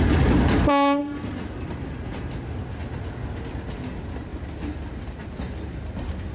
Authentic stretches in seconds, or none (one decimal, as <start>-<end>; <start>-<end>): 0.0-6.3